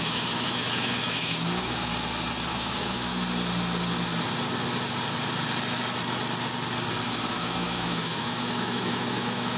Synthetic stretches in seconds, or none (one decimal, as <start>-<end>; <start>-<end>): 0.0-1.9; 2.5-3.1; 7.3-9.6